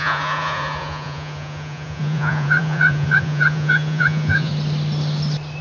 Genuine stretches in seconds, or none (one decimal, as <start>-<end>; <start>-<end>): 4.5-5.6

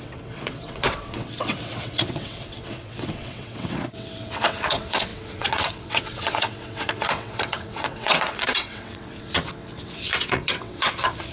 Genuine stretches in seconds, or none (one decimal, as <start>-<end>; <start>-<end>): none

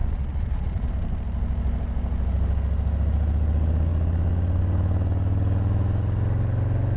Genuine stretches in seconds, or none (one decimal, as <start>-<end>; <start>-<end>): 0.9-7.0

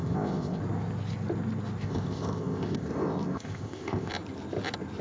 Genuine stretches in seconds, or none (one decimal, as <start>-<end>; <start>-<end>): 0.6-1.8; 4.1-5.0